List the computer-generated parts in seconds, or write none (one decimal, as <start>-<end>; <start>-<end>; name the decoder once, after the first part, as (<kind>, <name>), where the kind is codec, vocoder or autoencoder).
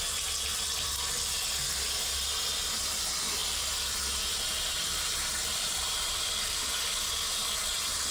3.4-6.7 (vocoder, BigVGAN v2)